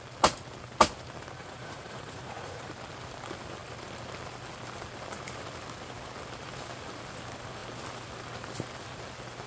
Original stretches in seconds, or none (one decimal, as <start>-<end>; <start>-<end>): 0.0-1.4; 2.7-9.5